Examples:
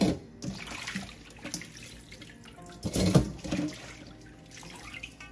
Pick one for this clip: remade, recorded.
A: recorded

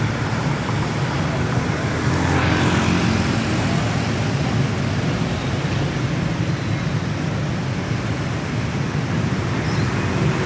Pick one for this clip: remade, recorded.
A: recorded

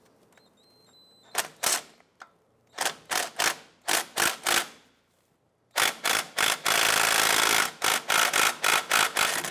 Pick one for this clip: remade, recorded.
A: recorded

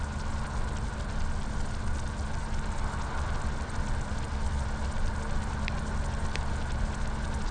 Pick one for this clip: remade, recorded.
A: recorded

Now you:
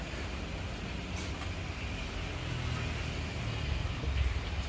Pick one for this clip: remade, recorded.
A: recorded